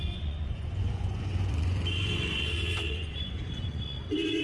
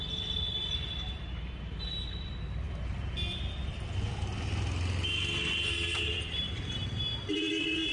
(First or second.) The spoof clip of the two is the first